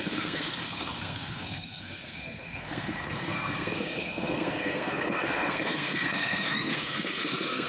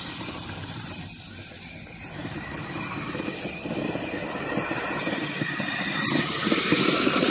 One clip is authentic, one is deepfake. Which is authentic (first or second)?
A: second